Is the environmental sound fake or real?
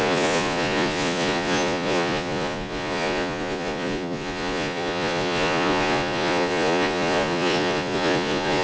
fake